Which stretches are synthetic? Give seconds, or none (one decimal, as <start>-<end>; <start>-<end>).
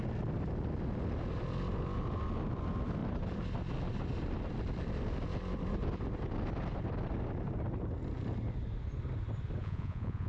9.6-10.3